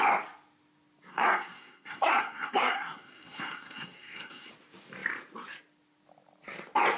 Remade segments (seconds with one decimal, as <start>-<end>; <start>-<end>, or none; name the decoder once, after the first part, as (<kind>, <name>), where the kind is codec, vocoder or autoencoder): 1.1-4.5 (codec, SNAC)